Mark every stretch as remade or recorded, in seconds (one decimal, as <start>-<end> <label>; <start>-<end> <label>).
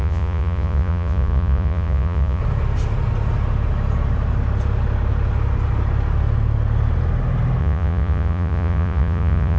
0.0-2.4 remade; 2.4-7.6 recorded; 7.6-9.6 remade